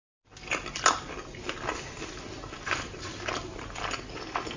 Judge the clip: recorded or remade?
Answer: recorded